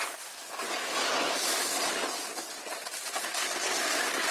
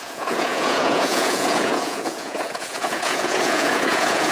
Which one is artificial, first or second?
second